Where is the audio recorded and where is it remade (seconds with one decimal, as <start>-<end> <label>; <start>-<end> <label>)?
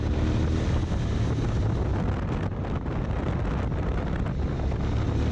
0.0-5.3 recorded